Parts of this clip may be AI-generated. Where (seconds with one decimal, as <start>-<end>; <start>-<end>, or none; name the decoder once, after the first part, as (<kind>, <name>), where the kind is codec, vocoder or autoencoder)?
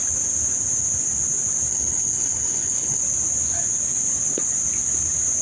1.7-3.0 (codec, HILCodec)